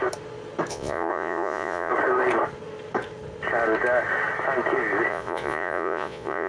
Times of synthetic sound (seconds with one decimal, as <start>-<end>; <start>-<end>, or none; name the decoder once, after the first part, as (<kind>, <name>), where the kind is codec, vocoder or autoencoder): 0.7-1.9 (vocoder, Vocos); 5.1-6.5